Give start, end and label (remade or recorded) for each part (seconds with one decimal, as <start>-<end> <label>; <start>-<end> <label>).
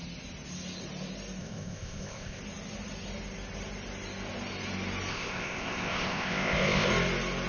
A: 0.0-1.4 recorded; 1.4-2.4 remade; 2.4-5.1 recorded; 5.1-6.9 remade; 6.9-7.5 recorded